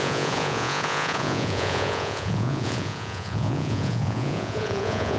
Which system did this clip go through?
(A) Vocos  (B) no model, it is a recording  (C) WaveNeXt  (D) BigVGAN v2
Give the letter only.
A